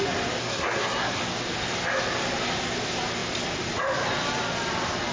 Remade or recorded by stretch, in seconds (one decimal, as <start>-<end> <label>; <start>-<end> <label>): 0.0-0.4 recorded; 0.4-1.2 remade; 1.2-5.1 recorded